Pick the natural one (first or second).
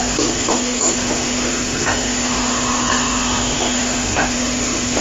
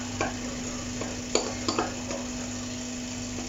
second